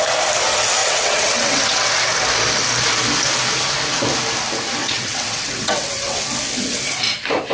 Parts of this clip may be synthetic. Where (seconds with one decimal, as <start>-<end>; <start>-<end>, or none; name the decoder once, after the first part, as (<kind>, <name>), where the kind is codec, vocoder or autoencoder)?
0.8-1.9 (vocoder, WaveNeXt); 4.8-6.2